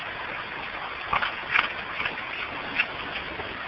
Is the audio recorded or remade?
recorded